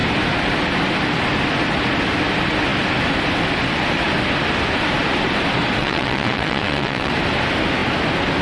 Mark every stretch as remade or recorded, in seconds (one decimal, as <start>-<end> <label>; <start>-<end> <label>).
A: 0.0-5.8 recorded; 5.8-7.1 remade; 7.1-8.4 recorded